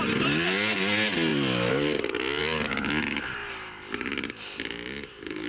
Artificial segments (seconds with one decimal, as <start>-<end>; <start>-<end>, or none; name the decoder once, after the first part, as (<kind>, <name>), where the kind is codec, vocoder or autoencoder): 1.3-2.4 (vocoder, BigVGAN v2); 3.4-4.3